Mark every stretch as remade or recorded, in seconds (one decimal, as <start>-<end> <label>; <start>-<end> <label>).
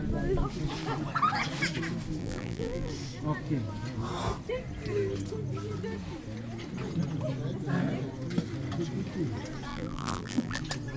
0.0-2.2 recorded; 2.2-2.9 remade; 2.9-9.7 recorded; 9.7-10.6 remade; 10.6-11.0 recorded